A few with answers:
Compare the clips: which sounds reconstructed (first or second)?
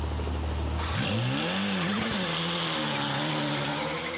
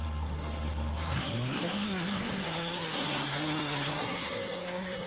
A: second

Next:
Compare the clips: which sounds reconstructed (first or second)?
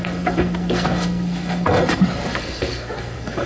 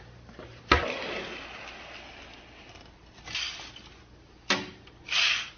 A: first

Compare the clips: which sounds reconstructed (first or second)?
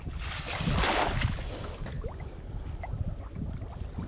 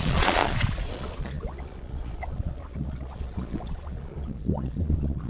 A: second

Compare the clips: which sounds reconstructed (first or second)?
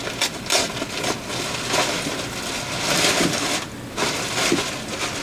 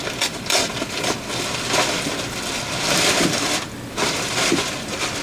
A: second